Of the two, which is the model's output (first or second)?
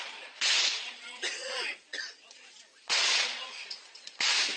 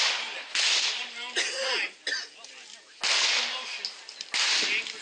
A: first